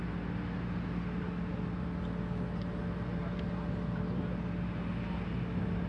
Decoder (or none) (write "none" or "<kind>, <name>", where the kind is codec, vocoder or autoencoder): none